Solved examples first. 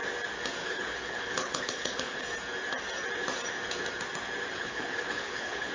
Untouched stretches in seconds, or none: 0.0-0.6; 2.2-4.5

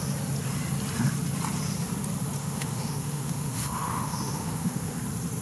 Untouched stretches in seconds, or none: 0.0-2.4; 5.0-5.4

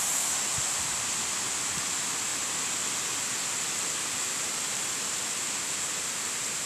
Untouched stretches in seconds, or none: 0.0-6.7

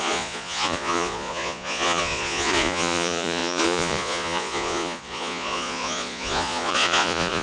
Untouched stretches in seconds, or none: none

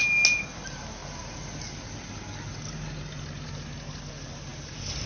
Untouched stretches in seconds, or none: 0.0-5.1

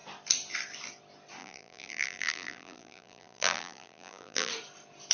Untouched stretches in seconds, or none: 0.0-1.4; 4.5-5.1

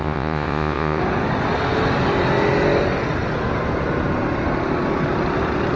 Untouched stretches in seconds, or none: 1.0-5.8